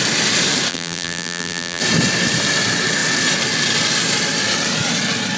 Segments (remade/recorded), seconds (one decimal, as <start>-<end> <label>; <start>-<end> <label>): 0.0-0.7 recorded; 0.7-1.8 remade; 1.8-5.4 recorded